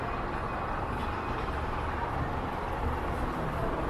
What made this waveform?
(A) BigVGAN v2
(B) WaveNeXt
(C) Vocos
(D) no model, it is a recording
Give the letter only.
D